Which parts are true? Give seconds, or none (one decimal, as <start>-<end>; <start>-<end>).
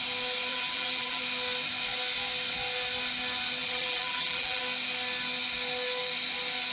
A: 0.0-0.5; 1.2-3.6; 4.6-6.7